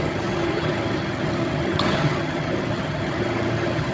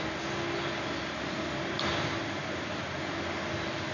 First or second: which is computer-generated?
first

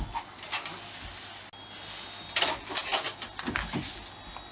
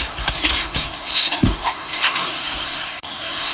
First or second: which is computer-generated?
second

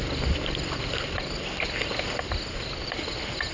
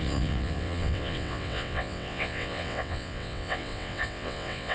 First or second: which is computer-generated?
second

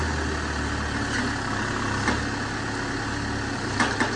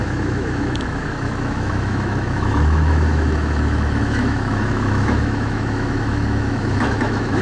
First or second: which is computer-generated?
second